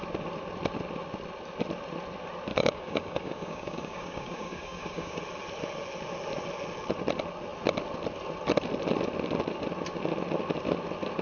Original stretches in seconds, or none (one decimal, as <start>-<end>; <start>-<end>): 0.0-2.5; 5.2-11.2